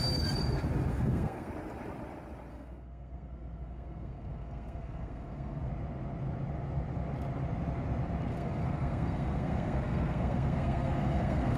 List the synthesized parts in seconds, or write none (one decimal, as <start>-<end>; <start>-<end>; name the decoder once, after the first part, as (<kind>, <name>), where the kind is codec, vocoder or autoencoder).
0.9-1.5 (codec, SNAC); 2.5-5.7; 8.3-11.6